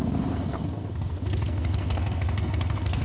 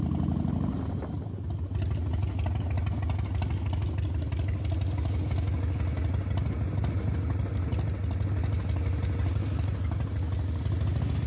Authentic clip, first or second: second